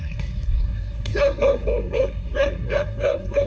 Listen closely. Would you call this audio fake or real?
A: fake